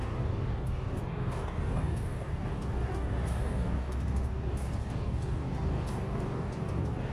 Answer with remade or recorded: remade